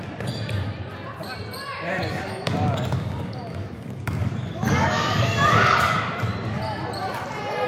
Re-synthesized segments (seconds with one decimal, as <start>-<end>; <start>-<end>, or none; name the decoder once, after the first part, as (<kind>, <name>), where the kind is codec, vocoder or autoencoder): 2.0-6.6 (codec, DAC)